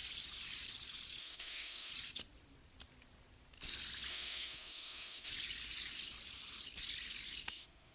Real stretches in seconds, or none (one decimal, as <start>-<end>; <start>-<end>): 0.0-1.2; 1.9-4.1; 5.3-7.5